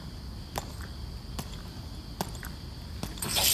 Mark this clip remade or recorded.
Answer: recorded